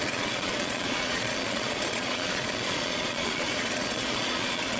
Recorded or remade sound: remade